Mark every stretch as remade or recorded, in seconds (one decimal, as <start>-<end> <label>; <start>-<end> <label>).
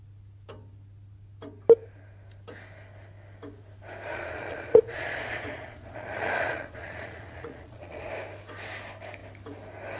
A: 0.0-4.1 recorded; 4.1-8.1 remade; 8.1-10.0 recorded